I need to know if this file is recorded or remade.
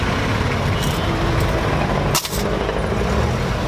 recorded